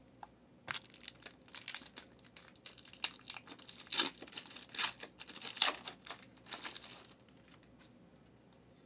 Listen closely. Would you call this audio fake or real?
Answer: real